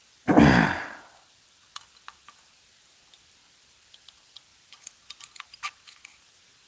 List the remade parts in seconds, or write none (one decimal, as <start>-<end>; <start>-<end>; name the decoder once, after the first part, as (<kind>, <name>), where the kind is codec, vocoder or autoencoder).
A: 4.5-6.3 (vocoder, BigVGAN v2)